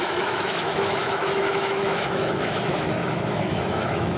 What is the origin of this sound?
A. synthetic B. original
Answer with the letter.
A